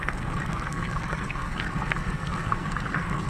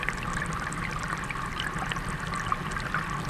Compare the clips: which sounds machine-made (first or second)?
first